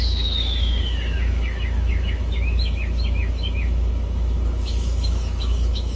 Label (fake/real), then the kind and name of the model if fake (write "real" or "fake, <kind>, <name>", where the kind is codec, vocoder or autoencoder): fake, autoencoder, DAC-VAE